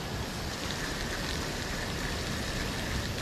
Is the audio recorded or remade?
recorded